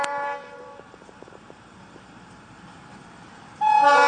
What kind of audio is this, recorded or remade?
remade